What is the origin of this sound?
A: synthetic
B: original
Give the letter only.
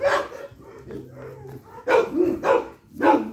B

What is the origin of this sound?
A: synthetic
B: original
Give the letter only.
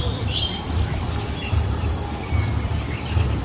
A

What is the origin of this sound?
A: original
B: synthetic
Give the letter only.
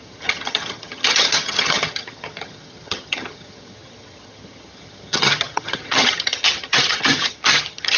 B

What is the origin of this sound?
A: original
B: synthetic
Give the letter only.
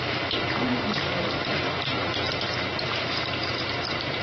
A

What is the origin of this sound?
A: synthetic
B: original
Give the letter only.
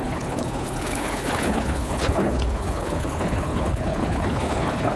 A